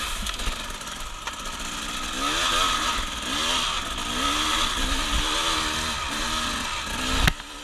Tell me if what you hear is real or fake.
real